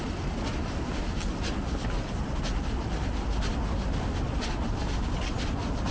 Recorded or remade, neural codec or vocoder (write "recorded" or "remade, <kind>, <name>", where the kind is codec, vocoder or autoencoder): recorded